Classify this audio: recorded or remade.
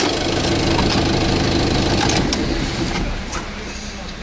recorded